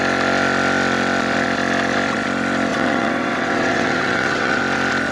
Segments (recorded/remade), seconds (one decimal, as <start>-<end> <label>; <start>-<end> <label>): 0.0-2.7 recorded; 2.7-4.6 remade; 4.6-5.1 recorded